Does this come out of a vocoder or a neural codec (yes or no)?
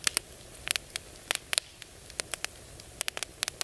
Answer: no